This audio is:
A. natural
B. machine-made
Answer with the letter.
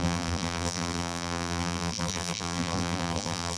B